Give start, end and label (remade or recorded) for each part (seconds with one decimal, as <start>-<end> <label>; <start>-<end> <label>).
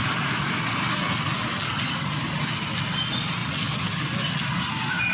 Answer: 0.0-5.1 recorded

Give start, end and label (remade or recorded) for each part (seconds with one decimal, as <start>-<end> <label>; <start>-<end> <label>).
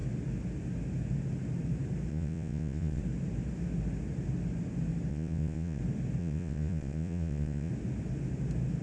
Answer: 0.0-2.1 recorded; 2.1-3.0 remade; 3.0-5.1 recorded; 5.1-5.8 remade; 5.8-6.2 recorded; 6.2-7.7 remade; 7.7-8.8 recorded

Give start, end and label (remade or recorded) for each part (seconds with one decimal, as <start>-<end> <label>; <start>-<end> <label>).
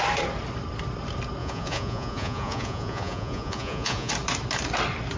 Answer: 0.0-1.4 recorded; 1.4-4.1 remade; 4.1-5.2 recorded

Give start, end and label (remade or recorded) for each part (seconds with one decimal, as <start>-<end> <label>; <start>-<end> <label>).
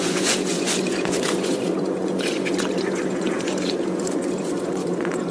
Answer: 0.0-5.3 remade